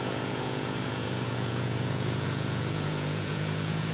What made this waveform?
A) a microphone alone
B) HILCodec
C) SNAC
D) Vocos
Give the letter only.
D